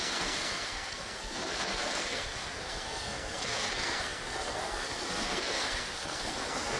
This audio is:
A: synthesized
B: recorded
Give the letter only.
A